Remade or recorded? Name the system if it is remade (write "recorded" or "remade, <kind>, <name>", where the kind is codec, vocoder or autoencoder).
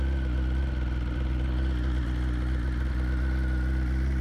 recorded